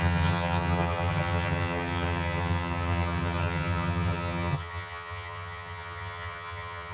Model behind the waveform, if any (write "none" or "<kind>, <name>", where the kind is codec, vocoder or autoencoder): vocoder, HiFi-GAN